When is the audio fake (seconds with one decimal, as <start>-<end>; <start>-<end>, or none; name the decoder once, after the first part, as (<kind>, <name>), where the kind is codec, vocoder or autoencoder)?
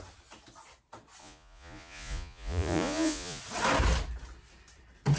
1.2-3.4 (vocoder, Vocos)